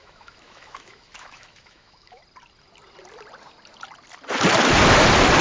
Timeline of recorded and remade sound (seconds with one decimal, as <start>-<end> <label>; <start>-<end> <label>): 0.0-2.2 remade; 2.2-5.4 recorded